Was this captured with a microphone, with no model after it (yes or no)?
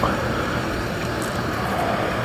no